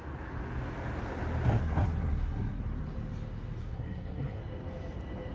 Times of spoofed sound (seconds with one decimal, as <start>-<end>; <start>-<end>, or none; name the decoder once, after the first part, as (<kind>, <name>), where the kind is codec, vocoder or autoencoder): 1.6-2.6 (codec, SNAC); 3.6-4.4